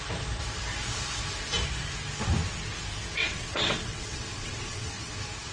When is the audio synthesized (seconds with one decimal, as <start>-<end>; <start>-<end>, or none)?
3.2-5.1